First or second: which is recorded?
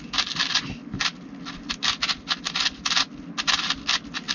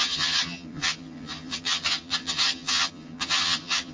first